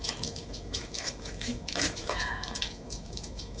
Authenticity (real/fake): fake